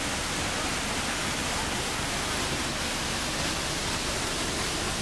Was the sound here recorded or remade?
recorded